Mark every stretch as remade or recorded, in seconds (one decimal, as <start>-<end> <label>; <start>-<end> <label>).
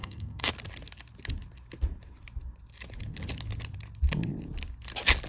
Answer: 0.0-0.5 remade; 0.5-5.3 recorded